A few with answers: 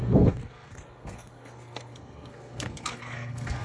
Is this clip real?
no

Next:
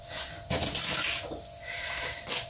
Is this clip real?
yes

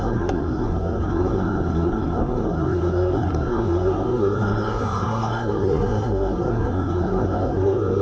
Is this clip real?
no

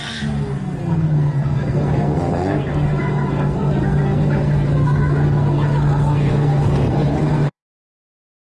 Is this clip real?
no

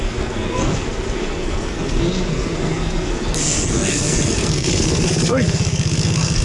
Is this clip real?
no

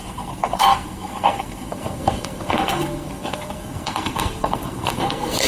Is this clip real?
no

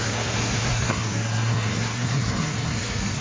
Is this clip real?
no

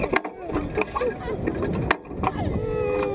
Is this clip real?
yes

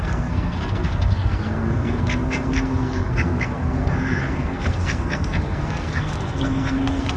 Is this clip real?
no